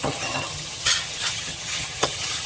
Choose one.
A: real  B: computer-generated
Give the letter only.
B